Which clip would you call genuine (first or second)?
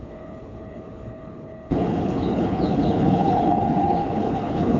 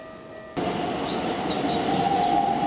second